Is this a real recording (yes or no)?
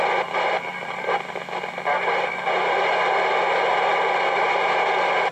yes